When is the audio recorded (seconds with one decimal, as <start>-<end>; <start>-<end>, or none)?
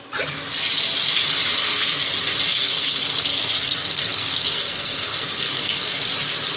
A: 0.0-1.6; 2.1-2.5; 6.1-6.6